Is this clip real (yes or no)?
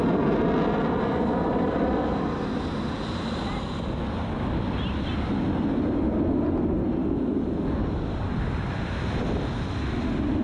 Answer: yes